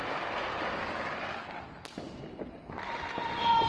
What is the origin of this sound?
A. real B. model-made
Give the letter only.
A